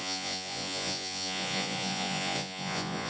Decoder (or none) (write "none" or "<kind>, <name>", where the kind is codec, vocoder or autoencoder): vocoder, Vocos